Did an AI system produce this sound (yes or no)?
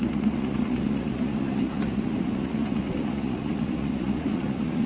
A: yes